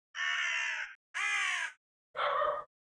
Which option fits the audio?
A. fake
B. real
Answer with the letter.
B